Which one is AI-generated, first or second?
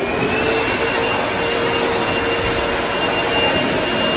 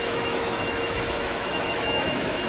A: second